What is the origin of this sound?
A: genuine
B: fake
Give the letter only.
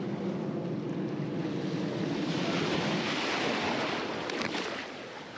A